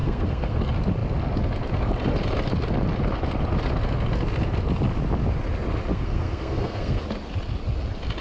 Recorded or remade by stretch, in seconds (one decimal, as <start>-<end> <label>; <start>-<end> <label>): 0.0-0.6 remade; 0.6-5.9 recorded; 5.9-7.0 remade; 7.0-8.2 recorded